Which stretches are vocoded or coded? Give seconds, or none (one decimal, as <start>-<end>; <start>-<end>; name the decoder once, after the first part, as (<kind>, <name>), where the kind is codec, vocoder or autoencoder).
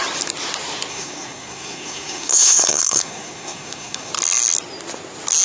0.9-4.1 (codec, SNAC)